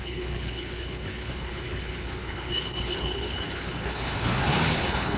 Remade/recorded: remade